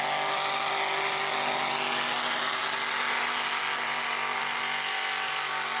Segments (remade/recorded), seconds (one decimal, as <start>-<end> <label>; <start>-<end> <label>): 0.0-5.8 recorded